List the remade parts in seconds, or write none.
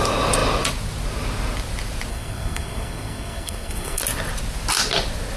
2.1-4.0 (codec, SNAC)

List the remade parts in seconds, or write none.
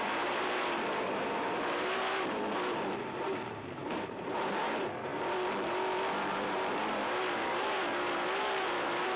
0.0-5.1 (vocoder, BigVGAN v2); 6.3-9.2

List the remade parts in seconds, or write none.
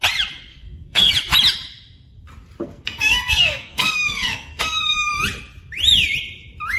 0.5-1.1 (codec, SNAC); 2.6-5.1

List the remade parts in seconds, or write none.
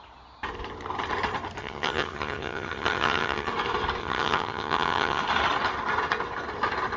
1.6-3.5 (vocoder, HiFi-GAN); 4.0-5.2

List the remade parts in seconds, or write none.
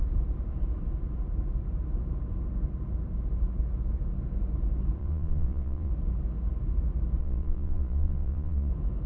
5.0-5.9 (vocoder, Vocos); 7.2-8.7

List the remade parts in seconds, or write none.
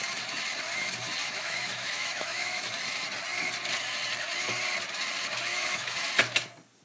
1.2-2.7 (autoencoder, DAC-VAE); 5.5-6.1